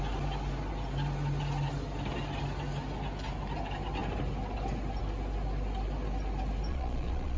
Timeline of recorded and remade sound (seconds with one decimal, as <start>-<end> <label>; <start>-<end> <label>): 0.0-6.7 recorded; 6.7-7.4 remade